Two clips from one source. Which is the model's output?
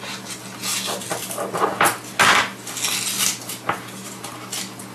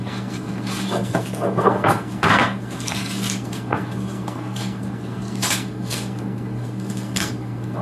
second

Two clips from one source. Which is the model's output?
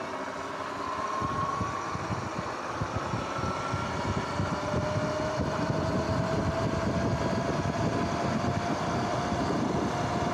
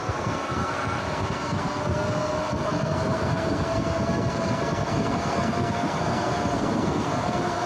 second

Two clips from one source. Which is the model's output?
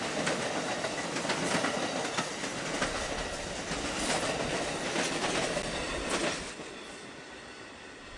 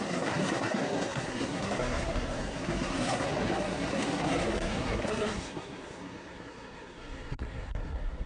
second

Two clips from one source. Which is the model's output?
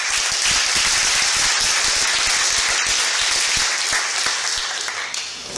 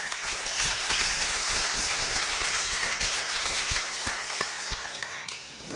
second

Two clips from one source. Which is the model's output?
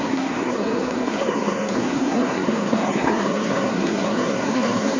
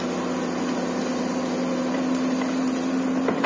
first